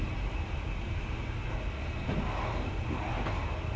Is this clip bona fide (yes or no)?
yes